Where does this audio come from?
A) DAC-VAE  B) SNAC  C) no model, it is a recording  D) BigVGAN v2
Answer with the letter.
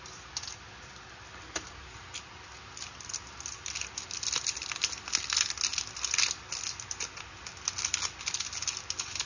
C